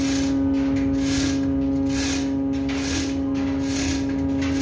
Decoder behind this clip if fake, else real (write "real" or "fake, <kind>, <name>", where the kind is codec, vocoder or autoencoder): real